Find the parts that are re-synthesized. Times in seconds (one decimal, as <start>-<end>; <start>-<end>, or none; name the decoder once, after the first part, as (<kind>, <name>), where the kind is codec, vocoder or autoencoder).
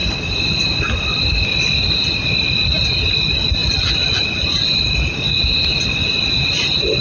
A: none